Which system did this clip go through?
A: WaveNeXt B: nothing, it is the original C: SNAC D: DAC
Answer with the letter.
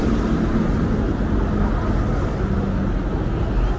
B